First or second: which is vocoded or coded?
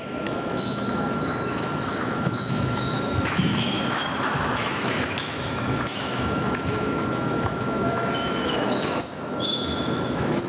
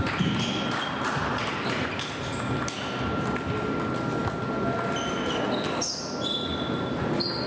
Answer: first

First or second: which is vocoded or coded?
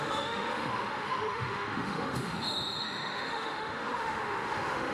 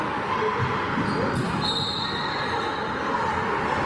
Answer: first